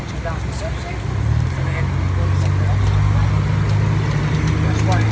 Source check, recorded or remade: recorded